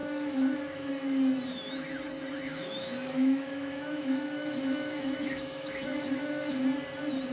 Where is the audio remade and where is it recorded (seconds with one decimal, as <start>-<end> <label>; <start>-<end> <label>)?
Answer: 0.0-0.9 remade; 0.9-2.5 recorded; 2.5-6.5 remade; 6.5-7.3 recorded